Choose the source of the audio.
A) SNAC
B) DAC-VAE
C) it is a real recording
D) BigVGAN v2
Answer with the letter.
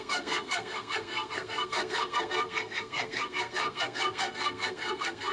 A